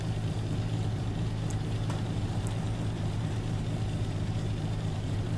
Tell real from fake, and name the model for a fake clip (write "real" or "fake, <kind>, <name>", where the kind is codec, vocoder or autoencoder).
fake, vocoder, BigVGAN v2